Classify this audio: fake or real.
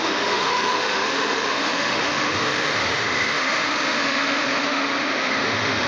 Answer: fake